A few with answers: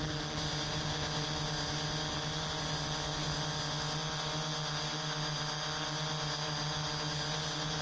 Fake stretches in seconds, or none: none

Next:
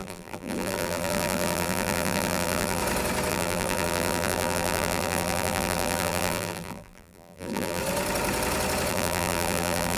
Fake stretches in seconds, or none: 0.0-2.8 (vocoder, BigVGAN v2); 3.3-7.8; 8.9-10.0

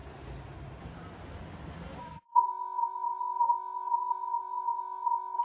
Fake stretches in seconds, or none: 2.0-5.4 (codec, SNAC)

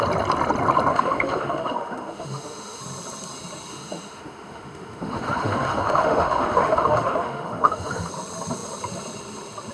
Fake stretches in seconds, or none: 0.9-2.8 (autoencoder, DAC-VAE); 3.7-8.1

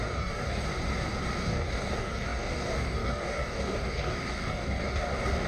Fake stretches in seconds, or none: 0.0-0.7 (codec, DAC); 1.4-5.5